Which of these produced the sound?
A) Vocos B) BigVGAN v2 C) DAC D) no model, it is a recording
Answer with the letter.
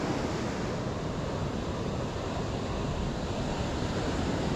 D